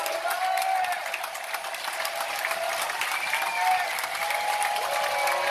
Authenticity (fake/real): real